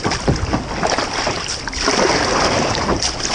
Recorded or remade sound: recorded